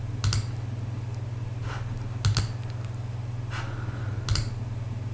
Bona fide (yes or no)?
yes